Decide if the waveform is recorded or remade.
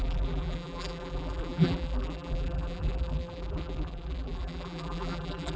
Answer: remade